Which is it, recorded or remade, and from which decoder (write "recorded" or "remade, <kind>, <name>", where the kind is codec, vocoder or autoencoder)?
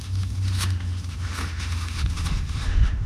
remade, autoencoder, DAC-VAE